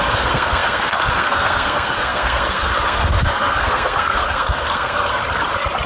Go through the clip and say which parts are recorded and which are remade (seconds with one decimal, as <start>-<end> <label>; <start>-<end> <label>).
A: 0.0-5.2 remade; 5.2-5.9 recorded